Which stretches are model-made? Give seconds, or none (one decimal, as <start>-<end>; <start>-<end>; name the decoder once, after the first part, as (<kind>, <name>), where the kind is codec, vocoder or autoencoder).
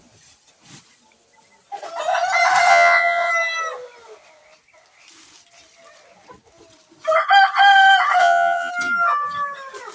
2.7-3.3 (vocoder, WaveNeXt); 8.2-8.7